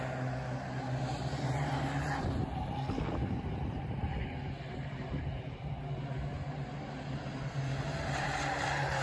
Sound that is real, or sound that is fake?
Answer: real